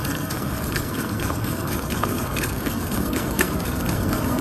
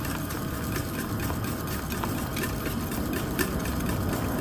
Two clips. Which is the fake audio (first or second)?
first